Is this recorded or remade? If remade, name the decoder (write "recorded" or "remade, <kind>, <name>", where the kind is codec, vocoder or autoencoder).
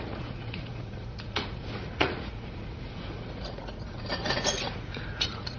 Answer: remade, vocoder, Vocos